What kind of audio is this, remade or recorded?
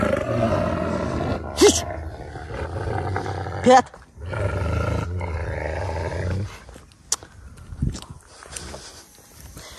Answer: recorded